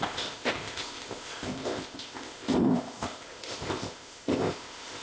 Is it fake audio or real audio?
fake